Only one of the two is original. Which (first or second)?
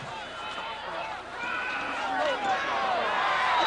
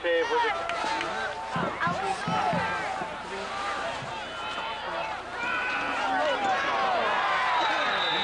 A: second